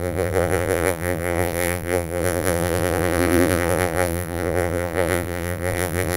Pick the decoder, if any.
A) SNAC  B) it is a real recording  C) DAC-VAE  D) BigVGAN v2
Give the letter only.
D